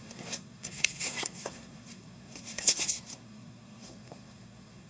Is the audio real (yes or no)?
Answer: no